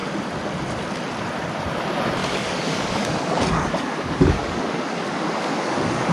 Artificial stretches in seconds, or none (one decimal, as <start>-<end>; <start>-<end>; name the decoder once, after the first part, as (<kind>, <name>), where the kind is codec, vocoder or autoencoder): 2.2-6.1 (codec, DAC)